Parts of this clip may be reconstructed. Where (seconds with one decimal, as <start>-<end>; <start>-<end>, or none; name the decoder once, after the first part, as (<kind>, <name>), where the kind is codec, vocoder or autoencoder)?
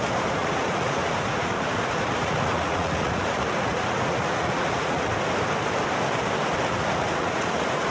0.4-5.1 (vocoder, Vocos); 6.7-7.9